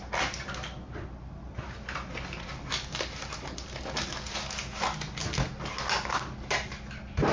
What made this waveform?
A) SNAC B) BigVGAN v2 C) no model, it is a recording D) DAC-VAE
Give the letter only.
C